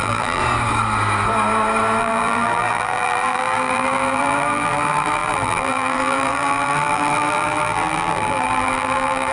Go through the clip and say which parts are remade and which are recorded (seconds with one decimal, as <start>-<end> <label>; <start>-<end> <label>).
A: 0.0-0.4 remade; 0.4-2.0 recorded; 2.0-9.3 remade